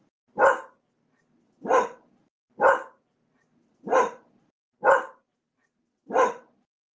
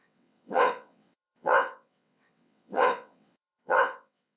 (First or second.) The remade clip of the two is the second